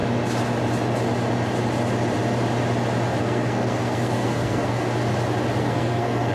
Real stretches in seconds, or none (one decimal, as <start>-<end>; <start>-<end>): 0.0-3.2; 4.9-5.6